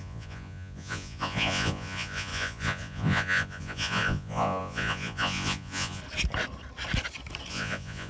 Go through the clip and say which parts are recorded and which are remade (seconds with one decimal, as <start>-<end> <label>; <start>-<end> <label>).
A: 0.0-6.0 remade; 6.0-7.5 recorded; 7.5-8.1 remade